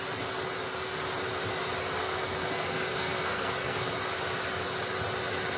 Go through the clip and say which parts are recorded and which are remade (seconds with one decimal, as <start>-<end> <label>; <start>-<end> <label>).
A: 0.0-2.0 recorded; 2.0-3.9 remade; 3.9-5.6 recorded